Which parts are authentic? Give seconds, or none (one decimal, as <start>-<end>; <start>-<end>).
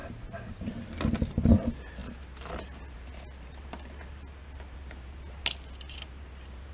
0.5-6.7